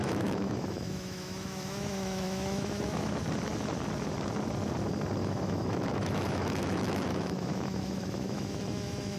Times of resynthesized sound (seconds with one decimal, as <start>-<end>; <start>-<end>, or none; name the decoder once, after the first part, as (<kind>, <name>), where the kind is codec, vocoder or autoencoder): 0.0-3.2 (autoencoder, DAC-VAE); 5.2-9.2